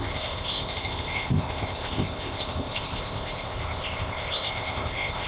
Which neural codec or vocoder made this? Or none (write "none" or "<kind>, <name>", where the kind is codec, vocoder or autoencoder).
codec, ZipCodec